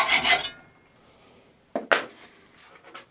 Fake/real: real